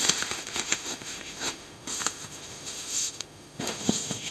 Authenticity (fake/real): fake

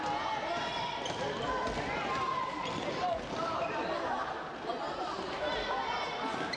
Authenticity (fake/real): real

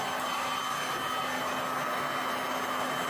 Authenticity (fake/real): real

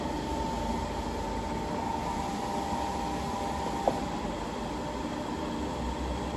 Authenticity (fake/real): real